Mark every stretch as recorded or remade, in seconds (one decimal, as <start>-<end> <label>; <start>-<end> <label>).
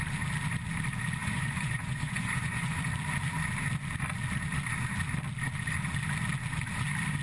0.0-1.2 recorded; 1.2-2.8 remade; 2.8-7.2 recorded